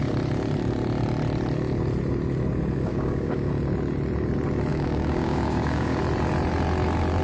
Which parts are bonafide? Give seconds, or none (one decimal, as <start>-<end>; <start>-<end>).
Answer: 0.0-2.9; 3.5-4.7; 6.0-7.2